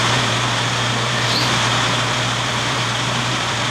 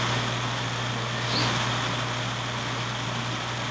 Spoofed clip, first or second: first